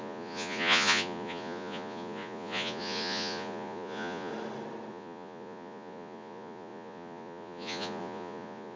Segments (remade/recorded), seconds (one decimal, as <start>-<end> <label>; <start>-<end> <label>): 0.0-4.3 remade; 4.3-4.9 recorded; 4.9-8.8 remade